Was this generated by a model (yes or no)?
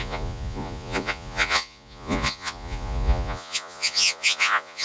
yes